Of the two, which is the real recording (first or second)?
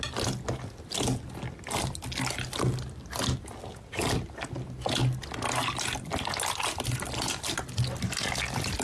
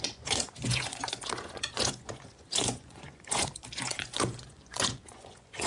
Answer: first